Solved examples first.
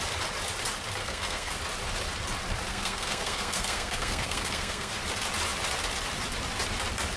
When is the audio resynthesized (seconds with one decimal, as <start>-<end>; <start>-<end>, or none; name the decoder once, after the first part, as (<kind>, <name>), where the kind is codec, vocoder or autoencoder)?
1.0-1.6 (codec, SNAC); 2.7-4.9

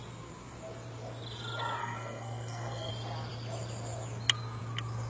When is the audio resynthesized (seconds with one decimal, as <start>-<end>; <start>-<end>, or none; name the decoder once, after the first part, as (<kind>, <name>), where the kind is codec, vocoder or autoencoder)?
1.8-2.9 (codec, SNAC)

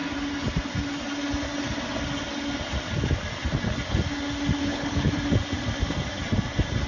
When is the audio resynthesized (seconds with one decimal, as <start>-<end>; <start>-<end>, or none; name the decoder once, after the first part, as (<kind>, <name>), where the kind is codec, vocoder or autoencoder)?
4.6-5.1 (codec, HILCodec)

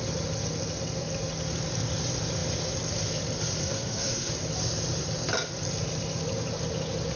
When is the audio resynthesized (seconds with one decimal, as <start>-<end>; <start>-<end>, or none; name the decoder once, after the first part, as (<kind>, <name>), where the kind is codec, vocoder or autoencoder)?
3.6-4.3 (codec, SNAC)

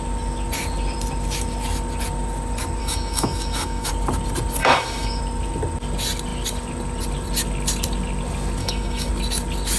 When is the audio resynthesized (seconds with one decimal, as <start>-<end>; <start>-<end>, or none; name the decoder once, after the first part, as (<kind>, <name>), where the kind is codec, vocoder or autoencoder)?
2.8-3.9 (autoencoder, DAC-VAE); 4.6-5.2; 8.6-9.1

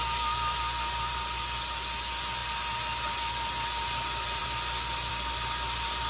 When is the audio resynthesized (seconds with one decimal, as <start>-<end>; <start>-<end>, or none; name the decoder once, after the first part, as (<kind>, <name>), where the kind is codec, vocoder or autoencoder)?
none

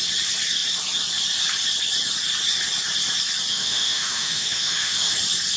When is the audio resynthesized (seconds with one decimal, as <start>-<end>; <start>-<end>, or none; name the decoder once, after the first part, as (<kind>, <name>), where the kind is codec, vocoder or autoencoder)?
3.5-5.1 (autoencoder, DAC-VAE)

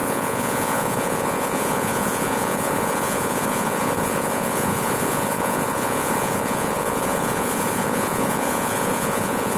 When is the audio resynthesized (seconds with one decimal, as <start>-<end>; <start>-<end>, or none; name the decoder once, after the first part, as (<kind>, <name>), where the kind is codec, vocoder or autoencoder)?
0.0-9.6 (vocoder, Vocos)